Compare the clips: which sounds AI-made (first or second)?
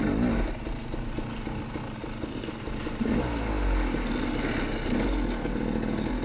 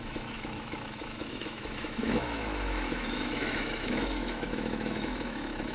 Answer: second